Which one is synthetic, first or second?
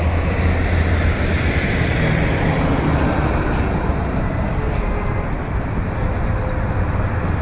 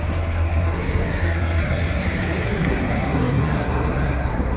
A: second